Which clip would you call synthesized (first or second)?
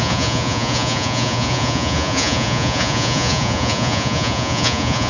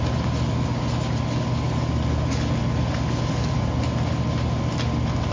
first